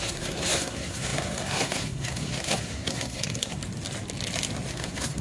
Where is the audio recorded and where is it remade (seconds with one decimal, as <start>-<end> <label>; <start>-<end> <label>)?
0.0-3.6 remade; 3.6-4.7 recorded; 4.7-5.2 remade